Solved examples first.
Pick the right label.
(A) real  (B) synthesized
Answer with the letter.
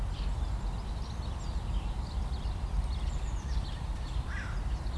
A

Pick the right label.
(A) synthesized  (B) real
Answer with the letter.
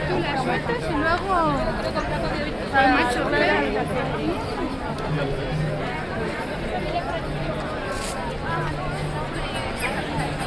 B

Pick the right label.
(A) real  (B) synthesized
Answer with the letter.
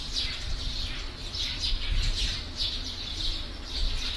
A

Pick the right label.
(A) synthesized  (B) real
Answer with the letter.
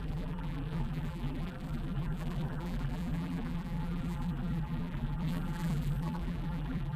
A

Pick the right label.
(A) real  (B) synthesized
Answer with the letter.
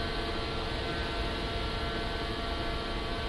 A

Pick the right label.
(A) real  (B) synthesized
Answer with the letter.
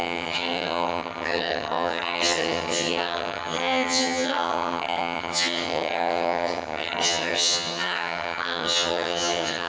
B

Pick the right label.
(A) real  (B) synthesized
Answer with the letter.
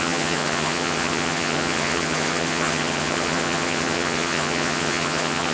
B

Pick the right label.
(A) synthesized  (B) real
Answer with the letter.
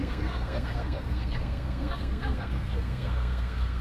A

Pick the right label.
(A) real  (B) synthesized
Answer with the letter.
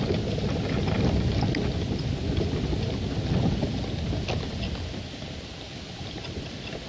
A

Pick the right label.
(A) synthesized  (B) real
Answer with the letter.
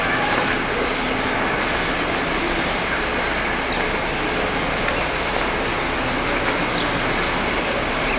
B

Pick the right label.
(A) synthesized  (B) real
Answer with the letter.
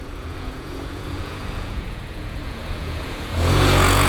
A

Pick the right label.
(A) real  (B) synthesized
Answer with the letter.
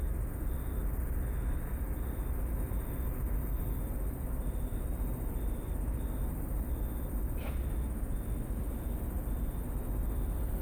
A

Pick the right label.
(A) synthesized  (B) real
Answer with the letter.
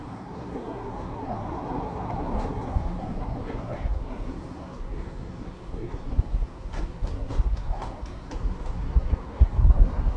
A